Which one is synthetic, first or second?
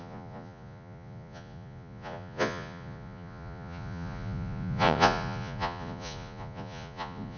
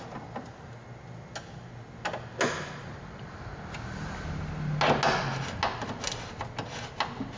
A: first